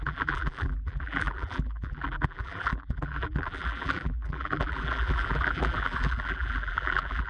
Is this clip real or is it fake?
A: fake